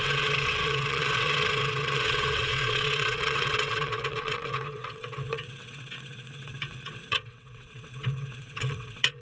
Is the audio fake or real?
fake